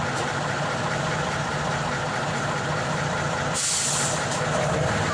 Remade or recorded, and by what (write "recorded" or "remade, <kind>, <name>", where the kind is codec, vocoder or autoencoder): recorded